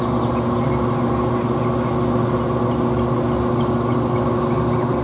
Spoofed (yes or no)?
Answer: no